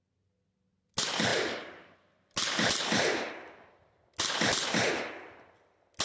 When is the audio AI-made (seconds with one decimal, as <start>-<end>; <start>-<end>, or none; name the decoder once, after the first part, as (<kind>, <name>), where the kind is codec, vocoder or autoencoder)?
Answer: none